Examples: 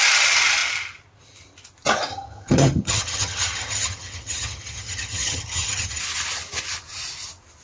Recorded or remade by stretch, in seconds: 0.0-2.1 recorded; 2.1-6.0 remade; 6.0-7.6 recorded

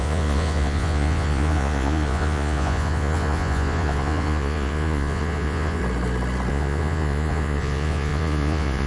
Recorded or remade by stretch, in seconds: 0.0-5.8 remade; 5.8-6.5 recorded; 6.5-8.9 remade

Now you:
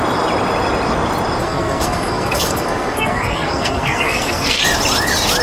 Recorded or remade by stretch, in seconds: 0.0-1.4 recorded; 1.4-4.6 remade; 4.6-5.4 recorded

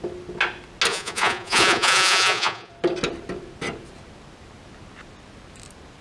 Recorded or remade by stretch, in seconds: 0.0-0.9 recorded; 0.9-2.7 remade; 2.7-6.0 recorded

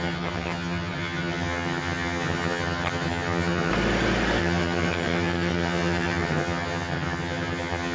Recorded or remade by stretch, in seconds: 0.0-3.7 remade; 3.7-4.4 recorded; 4.4-7.9 remade